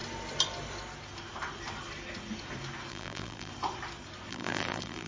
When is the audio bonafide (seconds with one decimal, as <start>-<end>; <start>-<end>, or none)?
0.0-2.9; 3.5-4.3